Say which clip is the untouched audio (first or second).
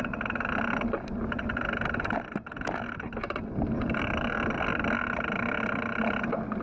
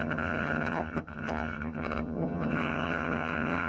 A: first